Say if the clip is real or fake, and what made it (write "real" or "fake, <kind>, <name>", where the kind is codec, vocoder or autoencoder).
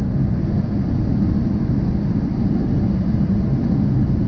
real